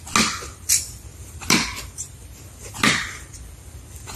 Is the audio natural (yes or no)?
yes